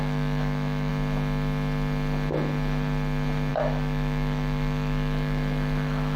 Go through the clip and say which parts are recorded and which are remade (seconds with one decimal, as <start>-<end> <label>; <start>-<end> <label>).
0.0-0.9 remade; 0.9-3.5 recorded; 3.5-6.2 remade